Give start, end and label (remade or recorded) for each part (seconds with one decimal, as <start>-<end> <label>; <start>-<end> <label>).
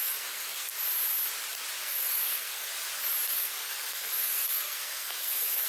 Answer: 0.0-0.7 remade; 0.7-1.8 recorded; 1.8-2.7 remade; 2.7-3.3 recorded; 3.3-5.7 remade